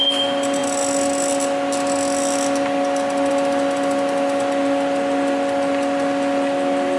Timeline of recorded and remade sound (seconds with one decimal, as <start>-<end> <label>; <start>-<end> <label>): 0.0-7.0 recorded